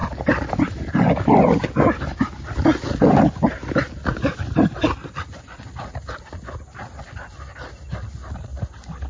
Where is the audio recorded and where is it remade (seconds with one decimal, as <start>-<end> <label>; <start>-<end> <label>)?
0.0-9.1 recorded